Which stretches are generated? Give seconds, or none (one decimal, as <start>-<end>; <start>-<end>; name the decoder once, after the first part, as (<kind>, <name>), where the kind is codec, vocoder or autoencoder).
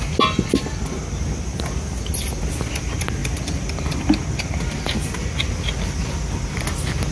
none